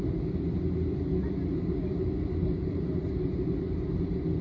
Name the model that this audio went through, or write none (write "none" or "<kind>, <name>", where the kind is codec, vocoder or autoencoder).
none